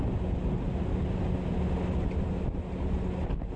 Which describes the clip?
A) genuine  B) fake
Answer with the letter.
A